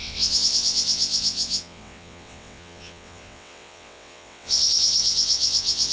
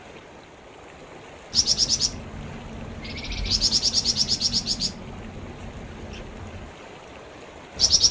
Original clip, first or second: second